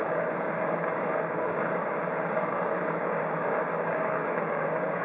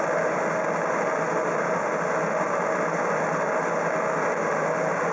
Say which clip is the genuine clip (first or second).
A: second